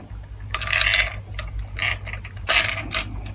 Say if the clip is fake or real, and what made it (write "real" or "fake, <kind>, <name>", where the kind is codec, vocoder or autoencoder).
real